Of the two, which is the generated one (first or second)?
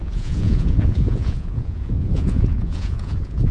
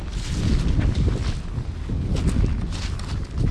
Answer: first